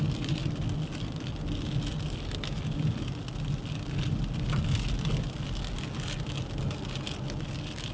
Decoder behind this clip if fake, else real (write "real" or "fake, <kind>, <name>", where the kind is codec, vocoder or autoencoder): real